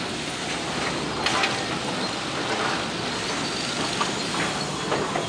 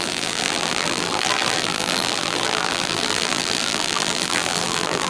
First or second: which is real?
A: first